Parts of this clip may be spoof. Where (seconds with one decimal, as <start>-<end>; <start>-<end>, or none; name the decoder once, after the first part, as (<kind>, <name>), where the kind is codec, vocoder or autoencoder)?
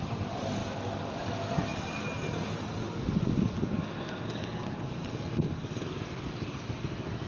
none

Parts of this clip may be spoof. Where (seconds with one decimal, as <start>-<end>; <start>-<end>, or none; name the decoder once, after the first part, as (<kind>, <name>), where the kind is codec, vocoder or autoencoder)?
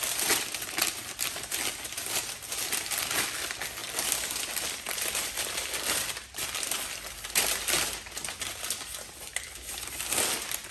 none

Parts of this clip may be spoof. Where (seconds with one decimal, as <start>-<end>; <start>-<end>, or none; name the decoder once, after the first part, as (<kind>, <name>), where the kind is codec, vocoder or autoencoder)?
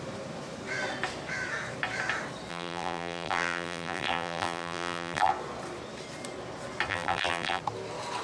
2.5-5.3 (vocoder, BigVGAN v2); 6.9-7.6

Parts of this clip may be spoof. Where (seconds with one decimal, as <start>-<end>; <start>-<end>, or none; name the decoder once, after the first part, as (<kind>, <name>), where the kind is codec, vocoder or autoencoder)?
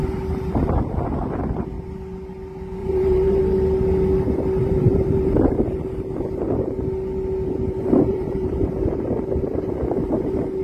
2.8-3.4 (vocoder, BigVGAN v2); 4.6-5.8; 8.1-8.7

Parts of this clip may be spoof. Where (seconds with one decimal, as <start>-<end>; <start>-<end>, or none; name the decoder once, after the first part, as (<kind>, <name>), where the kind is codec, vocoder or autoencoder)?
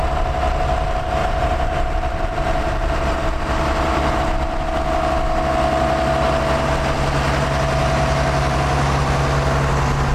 1.2-4.3 (vocoder, BigVGAN v2)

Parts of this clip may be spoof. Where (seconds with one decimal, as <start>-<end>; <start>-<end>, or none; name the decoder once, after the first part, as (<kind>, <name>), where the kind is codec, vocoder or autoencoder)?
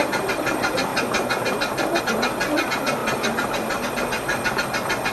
0.0-0.9 (vocoder, BigVGAN v2); 2.0-5.1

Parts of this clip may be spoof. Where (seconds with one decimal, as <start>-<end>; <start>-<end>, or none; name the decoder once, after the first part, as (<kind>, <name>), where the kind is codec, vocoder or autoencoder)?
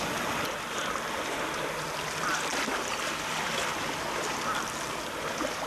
none